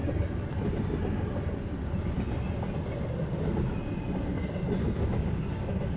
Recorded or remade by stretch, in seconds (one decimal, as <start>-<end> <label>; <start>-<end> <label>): 0.0-4.8 recorded; 4.8-5.4 remade; 5.4-6.0 recorded